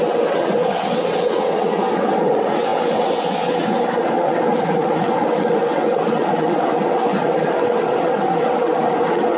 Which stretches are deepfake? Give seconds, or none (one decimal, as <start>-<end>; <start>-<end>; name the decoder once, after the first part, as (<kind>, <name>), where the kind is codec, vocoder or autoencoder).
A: 0.0-9.4 (vocoder, WaveNeXt)